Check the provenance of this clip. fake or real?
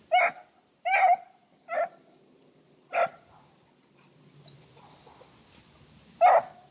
real